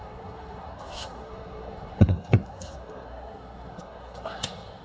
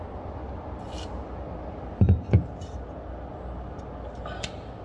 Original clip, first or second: second